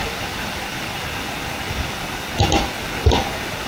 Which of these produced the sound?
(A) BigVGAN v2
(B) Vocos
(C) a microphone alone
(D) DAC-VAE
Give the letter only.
C